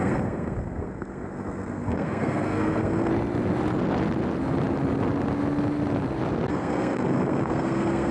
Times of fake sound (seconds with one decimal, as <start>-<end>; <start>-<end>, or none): 0.0-3.1; 6.5-8.1